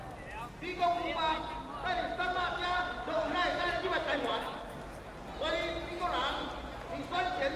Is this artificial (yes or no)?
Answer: no